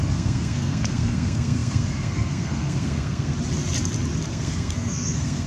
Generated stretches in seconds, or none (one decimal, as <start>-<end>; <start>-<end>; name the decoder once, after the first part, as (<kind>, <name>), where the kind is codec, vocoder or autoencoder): 0.0-3.3 (codec, SNAC); 4.3-5.5